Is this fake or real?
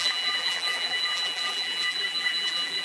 fake